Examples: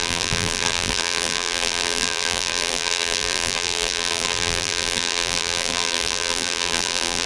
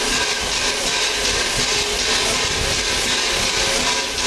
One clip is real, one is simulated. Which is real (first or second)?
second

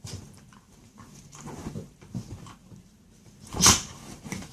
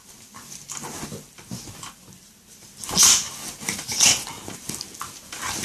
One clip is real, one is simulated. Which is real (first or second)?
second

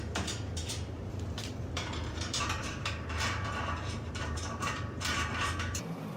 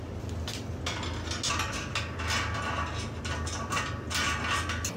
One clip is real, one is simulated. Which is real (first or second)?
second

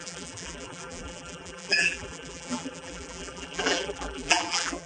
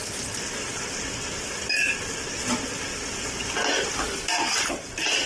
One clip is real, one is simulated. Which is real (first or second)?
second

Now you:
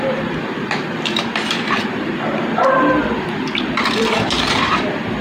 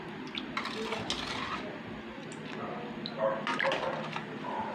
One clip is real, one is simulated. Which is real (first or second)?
second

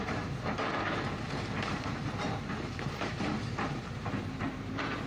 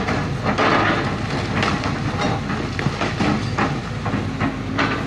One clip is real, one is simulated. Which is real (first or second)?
second